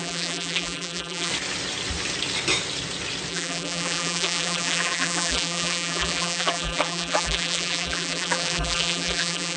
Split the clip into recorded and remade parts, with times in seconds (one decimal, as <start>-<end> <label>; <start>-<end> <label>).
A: 0.0-1.3 remade; 1.3-3.3 recorded; 3.3-9.6 remade

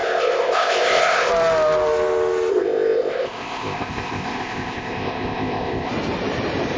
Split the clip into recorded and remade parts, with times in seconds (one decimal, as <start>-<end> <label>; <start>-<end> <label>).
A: 0.0-1.3 remade; 1.3-2.5 recorded; 2.5-5.9 remade; 5.9-6.8 recorded

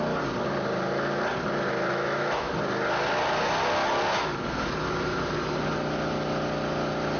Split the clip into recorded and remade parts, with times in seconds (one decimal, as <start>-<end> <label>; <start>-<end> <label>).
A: 0.0-1.9 recorded; 1.9-2.5 remade; 2.5-7.2 recorded

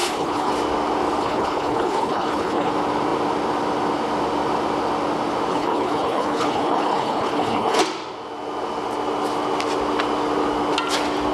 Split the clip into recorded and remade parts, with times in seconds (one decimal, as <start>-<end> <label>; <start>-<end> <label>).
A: 0.0-0.5 remade; 0.5-1.2 recorded; 1.2-2.7 remade; 2.7-5.5 recorded; 5.5-7.8 remade; 7.8-11.3 recorded